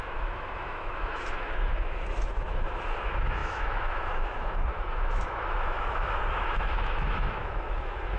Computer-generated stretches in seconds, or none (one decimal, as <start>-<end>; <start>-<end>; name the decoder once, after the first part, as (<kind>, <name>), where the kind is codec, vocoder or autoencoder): 0.0-8.2 (autoencoder, DAC-VAE)